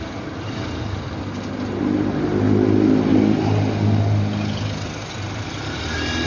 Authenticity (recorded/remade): recorded